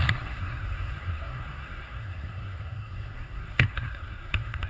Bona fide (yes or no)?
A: no